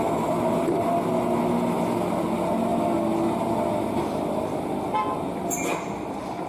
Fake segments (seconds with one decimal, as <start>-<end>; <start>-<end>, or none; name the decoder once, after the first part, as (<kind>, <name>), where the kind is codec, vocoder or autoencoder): none